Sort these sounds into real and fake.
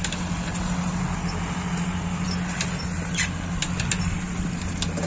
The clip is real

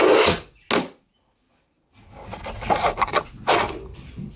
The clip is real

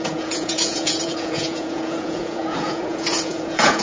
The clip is fake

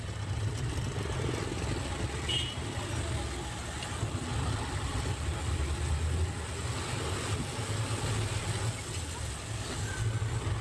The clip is real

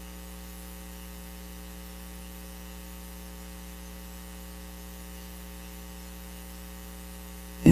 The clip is real